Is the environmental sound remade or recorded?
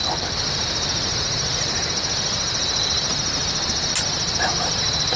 recorded